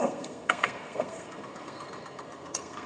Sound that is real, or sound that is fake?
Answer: fake